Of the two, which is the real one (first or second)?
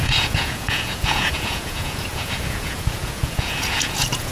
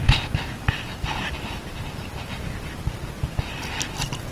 second